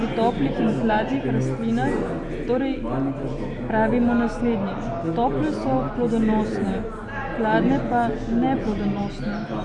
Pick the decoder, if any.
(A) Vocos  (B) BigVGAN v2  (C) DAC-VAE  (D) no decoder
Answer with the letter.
D